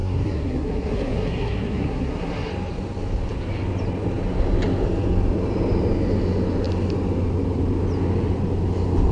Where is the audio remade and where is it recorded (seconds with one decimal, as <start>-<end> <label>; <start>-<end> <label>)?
0.0-2.5 remade; 2.5-9.1 recorded